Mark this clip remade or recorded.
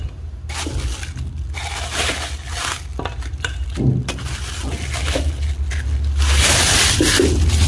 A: recorded